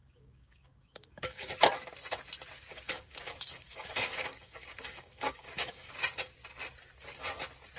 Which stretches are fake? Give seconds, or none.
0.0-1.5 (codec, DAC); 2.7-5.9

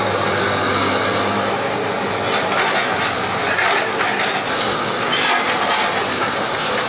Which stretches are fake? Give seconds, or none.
none

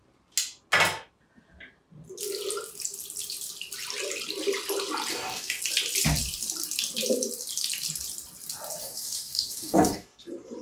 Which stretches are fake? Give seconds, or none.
5.1-5.6 (codec, DAC); 8.8-10.2

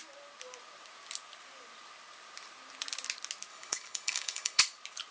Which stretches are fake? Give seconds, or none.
3.5-4.6 (codec, DAC)